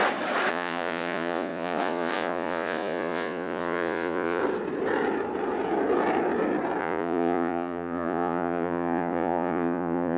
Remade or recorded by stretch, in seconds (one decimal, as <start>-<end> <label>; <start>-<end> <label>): 0.0-0.5 recorded; 0.5-4.4 remade; 4.4-6.8 recorded; 6.8-10.2 remade